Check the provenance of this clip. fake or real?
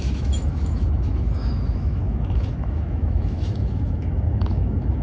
fake